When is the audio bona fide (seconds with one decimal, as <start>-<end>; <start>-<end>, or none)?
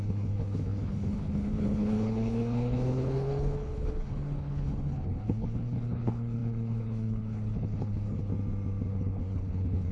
8.3-8.9